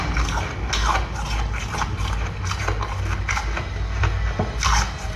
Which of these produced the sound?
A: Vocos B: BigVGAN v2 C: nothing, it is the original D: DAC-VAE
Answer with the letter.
C